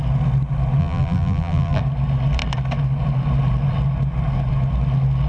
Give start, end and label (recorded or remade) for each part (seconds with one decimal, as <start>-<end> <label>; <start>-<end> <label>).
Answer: 0.0-0.8 recorded; 0.8-1.8 remade; 1.8-5.3 recorded